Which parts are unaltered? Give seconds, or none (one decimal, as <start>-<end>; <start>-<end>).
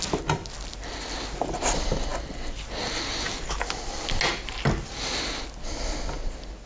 0.0-6.7